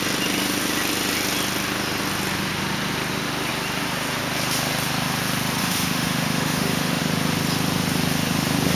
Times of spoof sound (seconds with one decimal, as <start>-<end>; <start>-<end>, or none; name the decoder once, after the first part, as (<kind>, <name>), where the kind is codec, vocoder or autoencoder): 5.6-7.0 (autoencoder, DAC-VAE)